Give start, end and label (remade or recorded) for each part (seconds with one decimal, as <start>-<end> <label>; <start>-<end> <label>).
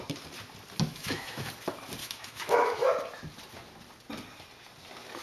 0.0-0.9 recorded; 0.9-1.5 remade; 1.5-2.0 recorded; 2.0-2.9 remade; 2.9-5.2 recorded